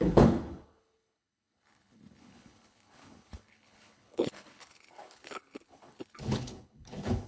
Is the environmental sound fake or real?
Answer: fake